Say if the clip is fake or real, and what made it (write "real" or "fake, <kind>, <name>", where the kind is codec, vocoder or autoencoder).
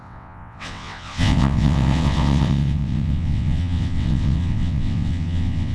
fake, vocoder, WaveNeXt